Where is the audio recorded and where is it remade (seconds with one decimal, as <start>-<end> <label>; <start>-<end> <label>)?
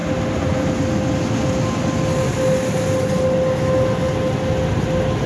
0.0-5.3 recorded